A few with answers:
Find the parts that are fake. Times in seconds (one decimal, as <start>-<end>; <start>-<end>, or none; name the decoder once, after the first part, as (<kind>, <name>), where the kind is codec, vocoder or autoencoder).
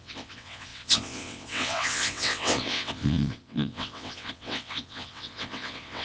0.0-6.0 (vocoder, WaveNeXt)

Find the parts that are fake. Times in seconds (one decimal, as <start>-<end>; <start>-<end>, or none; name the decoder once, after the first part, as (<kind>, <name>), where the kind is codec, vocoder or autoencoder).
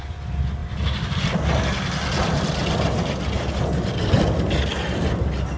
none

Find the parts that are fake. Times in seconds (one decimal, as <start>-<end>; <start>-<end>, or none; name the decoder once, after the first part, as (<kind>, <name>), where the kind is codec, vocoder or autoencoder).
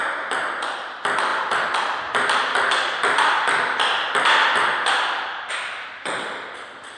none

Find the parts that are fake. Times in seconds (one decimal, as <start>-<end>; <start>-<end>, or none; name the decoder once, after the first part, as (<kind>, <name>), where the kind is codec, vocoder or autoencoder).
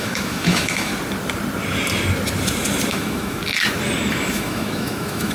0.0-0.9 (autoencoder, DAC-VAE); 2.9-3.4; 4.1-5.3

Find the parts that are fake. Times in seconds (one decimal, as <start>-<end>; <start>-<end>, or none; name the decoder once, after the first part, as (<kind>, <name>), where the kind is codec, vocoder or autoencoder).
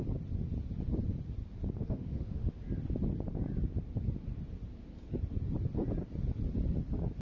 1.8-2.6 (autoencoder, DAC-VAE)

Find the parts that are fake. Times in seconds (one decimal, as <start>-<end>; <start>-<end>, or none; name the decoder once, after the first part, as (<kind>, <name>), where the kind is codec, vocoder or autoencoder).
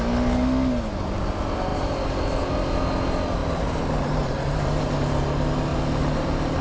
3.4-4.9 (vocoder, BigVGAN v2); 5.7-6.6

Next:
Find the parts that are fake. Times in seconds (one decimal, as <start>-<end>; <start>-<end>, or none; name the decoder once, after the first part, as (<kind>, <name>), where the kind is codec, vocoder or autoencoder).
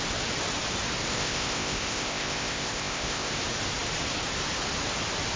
1.1-3.3 (codec, ZipCodec)